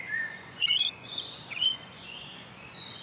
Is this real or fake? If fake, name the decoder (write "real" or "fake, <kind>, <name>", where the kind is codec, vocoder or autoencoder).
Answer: fake, vocoder, Vocos